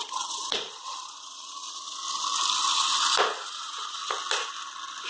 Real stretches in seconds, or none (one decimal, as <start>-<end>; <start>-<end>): 1.9-3.5; 4.0-5.1